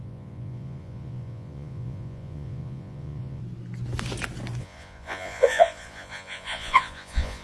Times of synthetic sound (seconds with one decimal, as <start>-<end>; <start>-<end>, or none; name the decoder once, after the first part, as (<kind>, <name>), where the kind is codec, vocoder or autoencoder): 0.0-3.4 (vocoder, Vocos); 4.6-7.4